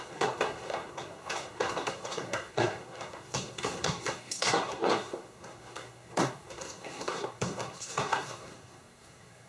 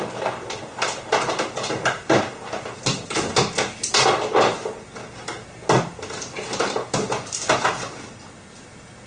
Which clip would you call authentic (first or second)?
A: second